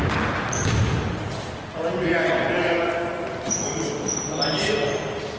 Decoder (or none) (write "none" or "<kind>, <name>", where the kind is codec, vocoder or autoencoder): none